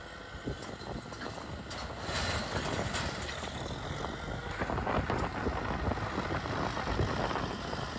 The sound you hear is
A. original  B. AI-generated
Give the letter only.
A